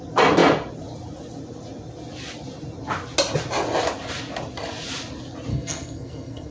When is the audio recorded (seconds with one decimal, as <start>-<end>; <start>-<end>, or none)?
0.0-5.5